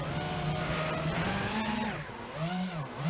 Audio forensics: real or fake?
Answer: real